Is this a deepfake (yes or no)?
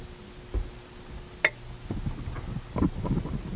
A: no